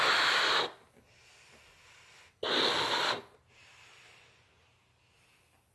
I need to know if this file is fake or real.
real